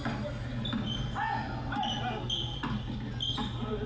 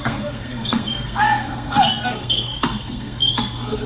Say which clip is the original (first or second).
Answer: first